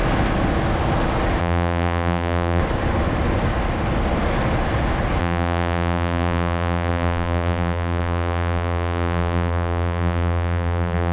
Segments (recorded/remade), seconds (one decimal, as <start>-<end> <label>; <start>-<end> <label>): 0.0-1.4 recorded; 1.4-2.6 remade; 2.6-5.2 recorded; 5.2-11.1 remade